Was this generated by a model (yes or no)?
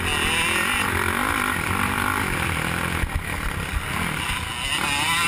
no